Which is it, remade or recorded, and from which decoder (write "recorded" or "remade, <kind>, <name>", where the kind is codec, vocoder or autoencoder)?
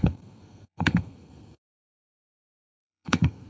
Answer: remade, codec, SNAC